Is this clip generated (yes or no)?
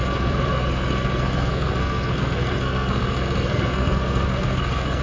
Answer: yes